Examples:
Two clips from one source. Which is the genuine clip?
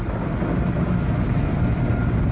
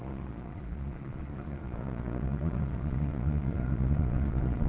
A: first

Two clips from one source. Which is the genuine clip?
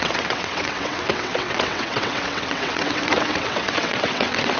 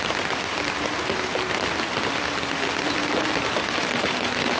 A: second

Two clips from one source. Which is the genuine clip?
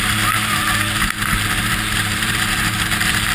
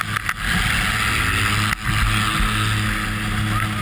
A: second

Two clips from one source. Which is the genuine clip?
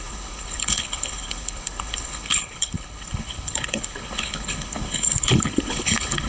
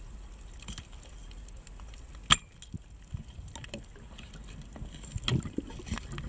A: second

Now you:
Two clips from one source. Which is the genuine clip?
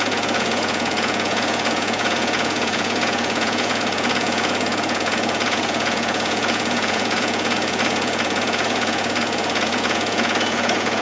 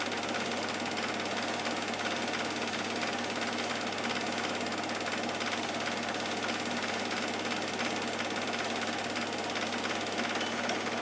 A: second